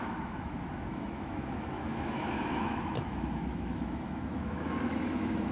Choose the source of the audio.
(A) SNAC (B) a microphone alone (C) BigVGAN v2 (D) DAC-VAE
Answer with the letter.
D